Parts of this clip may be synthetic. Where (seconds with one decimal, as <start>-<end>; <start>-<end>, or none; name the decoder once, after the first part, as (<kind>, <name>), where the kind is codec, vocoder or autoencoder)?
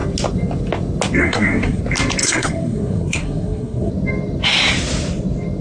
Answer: 1.2-1.8 (codec, SNAC); 2.2-3.9